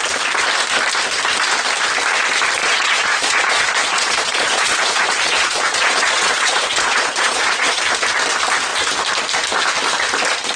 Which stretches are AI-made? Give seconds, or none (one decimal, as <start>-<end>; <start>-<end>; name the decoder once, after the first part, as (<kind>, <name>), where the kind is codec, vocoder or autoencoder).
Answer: 2.6-7.8 (vocoder, Vocos)

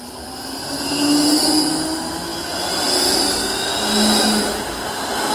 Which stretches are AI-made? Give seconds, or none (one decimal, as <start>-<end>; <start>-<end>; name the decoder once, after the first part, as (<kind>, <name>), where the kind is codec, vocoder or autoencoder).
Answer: none

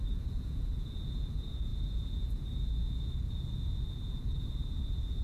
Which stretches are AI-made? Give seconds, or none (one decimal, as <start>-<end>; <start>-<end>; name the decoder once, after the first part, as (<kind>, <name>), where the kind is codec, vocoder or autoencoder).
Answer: 0.0-5.2 (vocoder, Vocos)